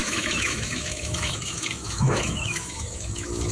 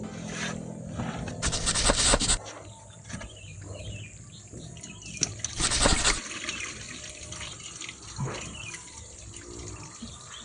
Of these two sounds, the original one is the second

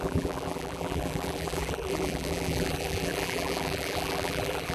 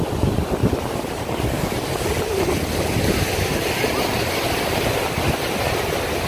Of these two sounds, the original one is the second